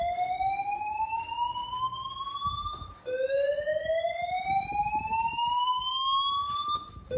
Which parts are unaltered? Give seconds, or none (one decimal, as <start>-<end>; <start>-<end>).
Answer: 0.0-1.6; 2.9-3.7; 5.9-7.2